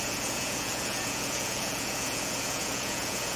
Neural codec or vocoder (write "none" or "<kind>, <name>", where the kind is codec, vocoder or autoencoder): vocoder, Vocos